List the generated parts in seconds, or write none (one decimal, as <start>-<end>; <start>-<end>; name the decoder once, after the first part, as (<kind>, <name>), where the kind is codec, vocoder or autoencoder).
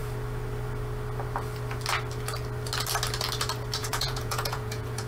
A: 3.8-5.1 (vocoder, Vocos)